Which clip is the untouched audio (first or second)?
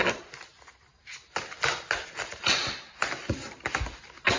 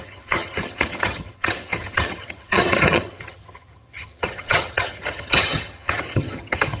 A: first